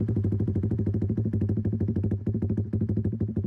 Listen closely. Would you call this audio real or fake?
fake